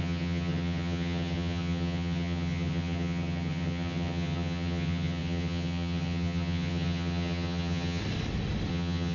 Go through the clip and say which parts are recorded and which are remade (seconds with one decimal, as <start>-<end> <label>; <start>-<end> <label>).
0.0-8.0 remade; 8.0-8.7 recorded; 8.7-9.1 remade

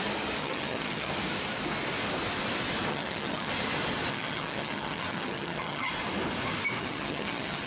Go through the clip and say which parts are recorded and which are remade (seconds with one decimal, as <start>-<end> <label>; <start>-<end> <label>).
0.0-0.4 recorded; 0.4-1.1 remade; 1.1-2.9 recorded; 2.9-3.5 remade; 3.5-4.1 recorded; 4.1-5.9 remade; 5.9-6.8 recorded; 6.8-7.7 remade

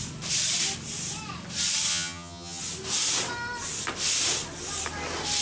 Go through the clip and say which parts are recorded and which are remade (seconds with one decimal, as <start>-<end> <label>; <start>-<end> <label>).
0.0-1.9 recorded; 1.9-2.6 remade; 2.6-5.4 recorded